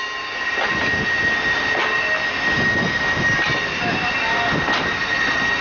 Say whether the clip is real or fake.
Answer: real